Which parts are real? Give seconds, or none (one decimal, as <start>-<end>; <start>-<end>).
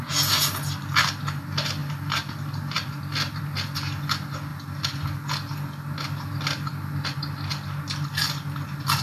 0.0-1.8; 3.4-9.0